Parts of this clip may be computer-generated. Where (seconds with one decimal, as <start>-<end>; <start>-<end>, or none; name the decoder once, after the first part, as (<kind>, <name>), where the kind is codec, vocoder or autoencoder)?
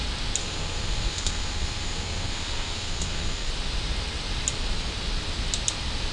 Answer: 0.4-3.5 (codec, SNAC)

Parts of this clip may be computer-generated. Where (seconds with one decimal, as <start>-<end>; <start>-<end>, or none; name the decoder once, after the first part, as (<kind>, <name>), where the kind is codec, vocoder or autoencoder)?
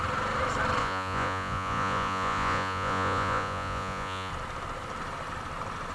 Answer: 0.8-4.3 (vocoder, Vocos)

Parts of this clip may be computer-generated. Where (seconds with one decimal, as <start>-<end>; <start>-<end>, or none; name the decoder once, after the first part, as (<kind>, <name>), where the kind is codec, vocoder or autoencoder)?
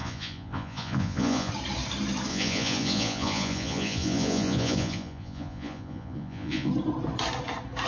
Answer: 0.0-1.5 (vocoder, Vocos); 2.3-6.7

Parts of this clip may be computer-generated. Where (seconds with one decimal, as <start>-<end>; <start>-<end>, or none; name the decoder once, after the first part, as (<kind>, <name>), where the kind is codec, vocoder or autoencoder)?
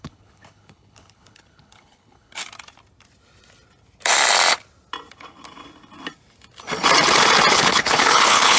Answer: 0.0-2.4 (codec, HILCodec); 7.5-8.6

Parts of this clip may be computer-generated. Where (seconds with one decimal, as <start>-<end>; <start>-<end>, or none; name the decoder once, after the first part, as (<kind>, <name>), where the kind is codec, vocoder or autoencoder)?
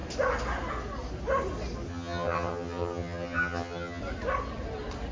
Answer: 1.9-4.0 (vocoder, HiFi-GAN)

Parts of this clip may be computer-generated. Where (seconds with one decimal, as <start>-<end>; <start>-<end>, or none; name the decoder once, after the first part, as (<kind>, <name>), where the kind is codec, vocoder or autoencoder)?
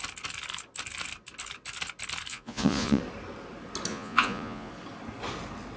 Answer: 2.3-3.0 (vocoder, Vocos); 3.9-4.7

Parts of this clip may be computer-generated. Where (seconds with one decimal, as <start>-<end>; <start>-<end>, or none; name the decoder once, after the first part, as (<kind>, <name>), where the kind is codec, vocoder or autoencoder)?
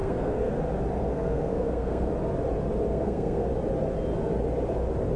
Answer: 0.0-0.5 (codec, SNAC); 1.0-2.1; 2.9-3.5